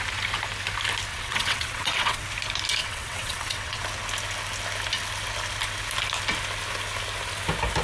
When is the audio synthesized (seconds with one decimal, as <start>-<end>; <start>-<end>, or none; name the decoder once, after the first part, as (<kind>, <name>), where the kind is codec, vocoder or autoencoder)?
1.1-2.2 (vocoder, WaveNeXt); 2.8-3.8